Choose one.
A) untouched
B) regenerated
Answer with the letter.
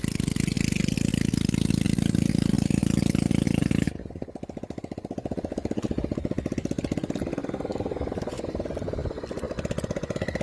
A